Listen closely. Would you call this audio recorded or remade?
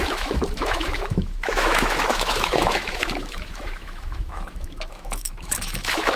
remade